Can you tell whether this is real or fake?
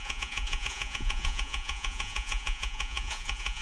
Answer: fake